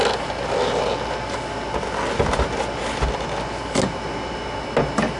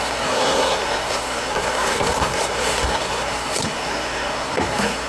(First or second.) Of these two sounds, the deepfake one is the second